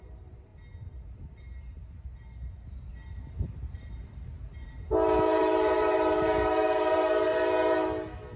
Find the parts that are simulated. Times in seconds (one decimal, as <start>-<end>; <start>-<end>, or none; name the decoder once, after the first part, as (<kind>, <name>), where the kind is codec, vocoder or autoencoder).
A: 0.0-0.5 (vocoder, BigVGAN v2); 5.4-7.3